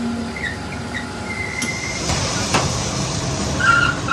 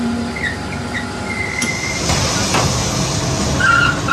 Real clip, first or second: second